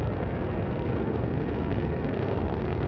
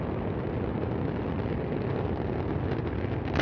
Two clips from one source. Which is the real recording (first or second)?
second